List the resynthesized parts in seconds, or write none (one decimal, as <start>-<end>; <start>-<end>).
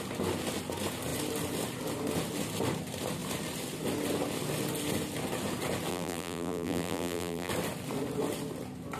5.9-7.5